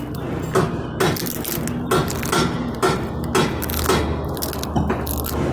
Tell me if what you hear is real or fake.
real